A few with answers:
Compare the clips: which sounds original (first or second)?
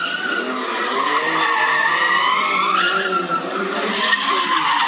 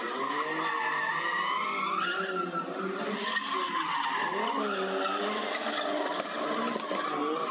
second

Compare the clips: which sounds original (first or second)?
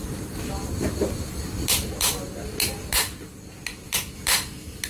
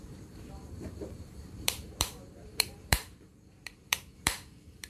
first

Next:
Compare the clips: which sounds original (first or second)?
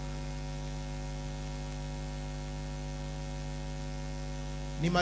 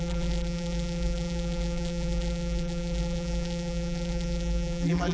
first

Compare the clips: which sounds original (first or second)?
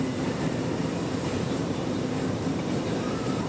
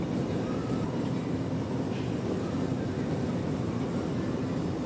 second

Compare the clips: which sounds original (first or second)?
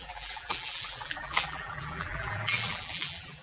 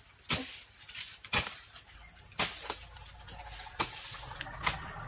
second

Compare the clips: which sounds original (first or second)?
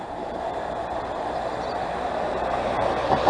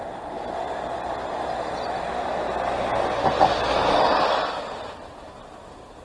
second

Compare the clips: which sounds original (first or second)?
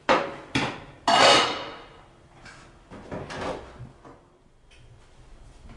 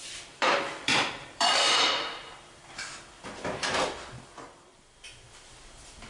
first